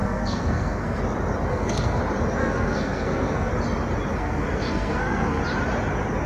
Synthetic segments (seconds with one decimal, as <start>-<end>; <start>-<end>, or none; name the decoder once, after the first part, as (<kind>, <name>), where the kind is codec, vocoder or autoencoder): 0.0-1.0 (codec, SNAC); 1.5-2.0; 2.4-3.5; 4.1-5.4